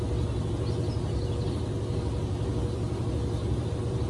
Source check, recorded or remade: recorded